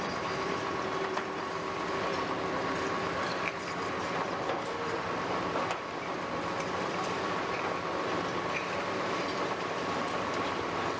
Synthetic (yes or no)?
yes